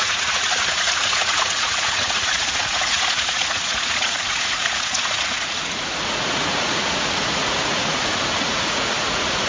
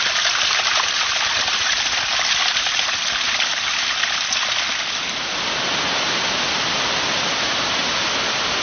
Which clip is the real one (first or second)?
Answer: second